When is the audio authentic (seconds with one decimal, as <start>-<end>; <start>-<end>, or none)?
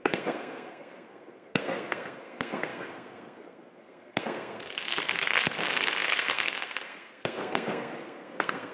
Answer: none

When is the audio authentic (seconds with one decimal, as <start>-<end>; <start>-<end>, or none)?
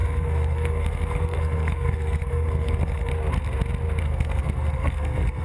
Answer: 3.1-4.0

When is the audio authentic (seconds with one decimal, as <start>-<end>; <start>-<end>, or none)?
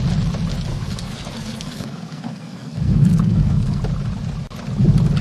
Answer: 0.0-0.7; 3.8-5.2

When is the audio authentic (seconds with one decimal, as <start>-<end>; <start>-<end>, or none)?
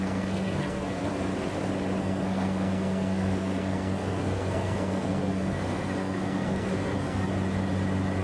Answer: 1.3-2.0; 7.3-8.2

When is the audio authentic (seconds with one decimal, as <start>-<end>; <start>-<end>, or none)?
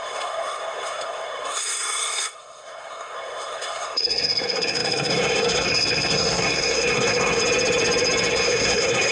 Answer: 7.4-8.3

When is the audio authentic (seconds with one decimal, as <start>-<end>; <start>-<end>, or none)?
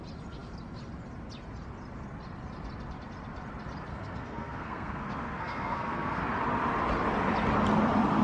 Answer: 0.0-3.9; 6.2-8.2